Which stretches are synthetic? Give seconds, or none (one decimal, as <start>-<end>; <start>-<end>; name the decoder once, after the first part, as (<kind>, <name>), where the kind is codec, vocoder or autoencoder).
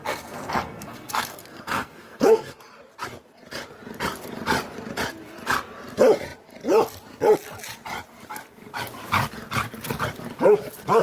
0.0-2.6 (codec, SNAC)